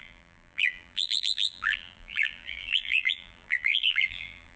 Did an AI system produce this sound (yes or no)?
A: yes